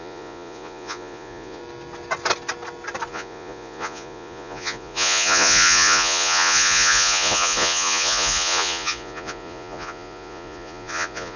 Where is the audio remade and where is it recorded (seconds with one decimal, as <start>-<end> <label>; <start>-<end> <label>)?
0.0-1.6 remade; 1.6-3.1 recorded; 3.1-11.4 remade